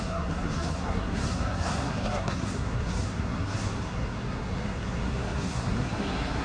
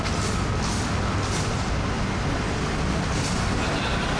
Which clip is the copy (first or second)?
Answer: first